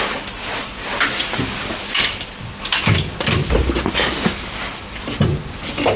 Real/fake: real